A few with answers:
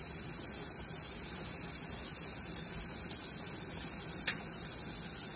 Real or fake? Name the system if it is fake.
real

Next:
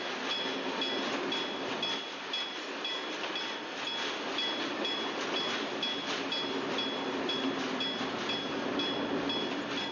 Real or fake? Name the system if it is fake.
real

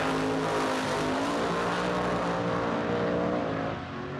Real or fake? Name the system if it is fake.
real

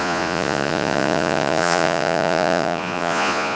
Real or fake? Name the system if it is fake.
fake, vocoder, Vocos